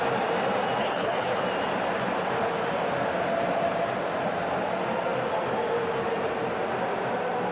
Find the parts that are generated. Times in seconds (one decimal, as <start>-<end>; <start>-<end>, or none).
0.8-1.4